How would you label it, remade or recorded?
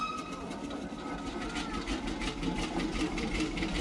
recorded